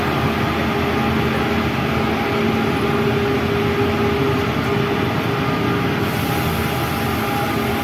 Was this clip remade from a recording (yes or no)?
no